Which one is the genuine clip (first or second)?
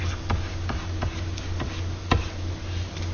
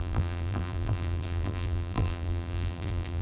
first